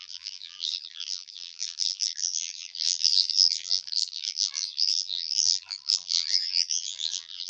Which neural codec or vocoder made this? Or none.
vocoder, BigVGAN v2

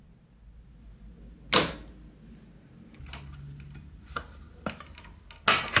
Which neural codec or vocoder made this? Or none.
none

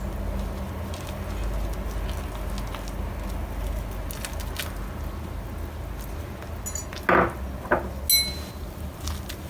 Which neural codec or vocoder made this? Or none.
none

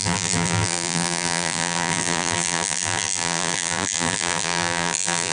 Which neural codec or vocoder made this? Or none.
vocoder, BigVGAN v2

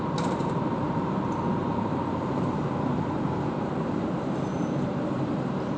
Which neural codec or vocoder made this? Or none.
vocoder, BigVGAN v2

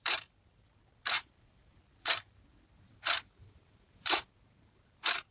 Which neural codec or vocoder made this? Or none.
vocoder, BigVGAN v2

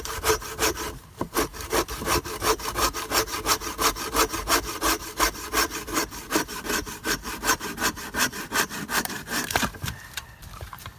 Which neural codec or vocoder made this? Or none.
vocoder, BigVGAN v2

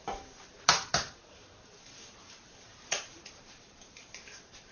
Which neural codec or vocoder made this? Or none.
vocoder, BigVGAN v2